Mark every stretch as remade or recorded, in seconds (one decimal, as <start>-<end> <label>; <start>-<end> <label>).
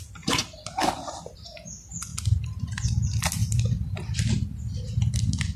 0.0-2.1 remade; 2.1-2.6 recorded; 2.6-5.6 remade